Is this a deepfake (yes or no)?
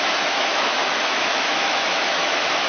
yes